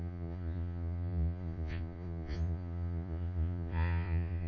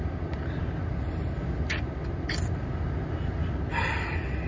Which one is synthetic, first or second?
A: first